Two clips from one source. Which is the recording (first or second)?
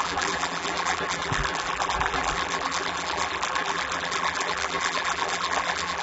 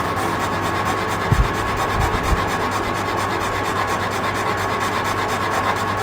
second